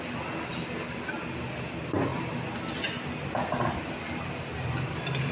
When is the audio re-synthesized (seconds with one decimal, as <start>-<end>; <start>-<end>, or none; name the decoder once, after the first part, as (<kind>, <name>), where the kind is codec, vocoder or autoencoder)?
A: 2.1-5.3 (vocoder, BigVGAN v2)